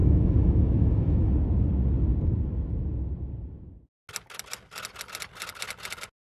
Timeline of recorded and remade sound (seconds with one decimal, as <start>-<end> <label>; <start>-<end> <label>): 0.0-1.3 remade; 1.3-6.3 recorded